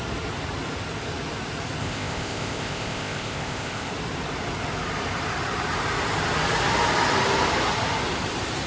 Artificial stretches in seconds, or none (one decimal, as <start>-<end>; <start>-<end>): 1.8-3.9